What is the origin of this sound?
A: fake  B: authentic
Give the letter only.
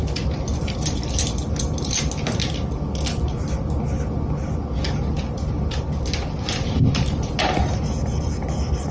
B